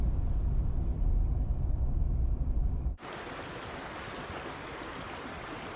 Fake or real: real